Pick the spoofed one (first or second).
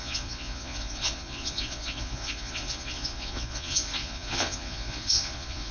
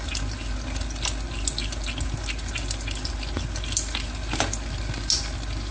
first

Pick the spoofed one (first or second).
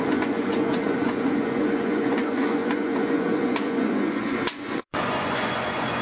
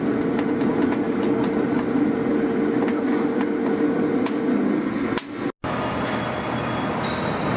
first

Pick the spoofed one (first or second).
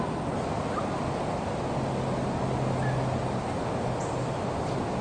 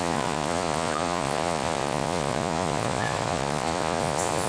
second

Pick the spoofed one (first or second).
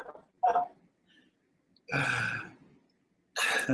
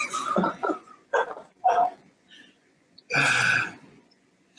second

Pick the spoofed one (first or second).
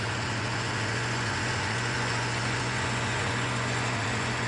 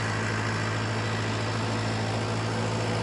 first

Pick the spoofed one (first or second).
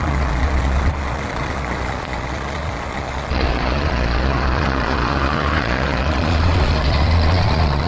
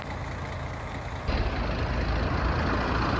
first